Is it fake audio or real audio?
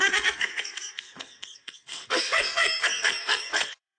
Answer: fake